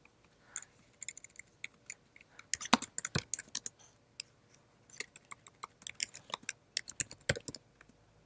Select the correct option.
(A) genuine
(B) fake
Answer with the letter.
A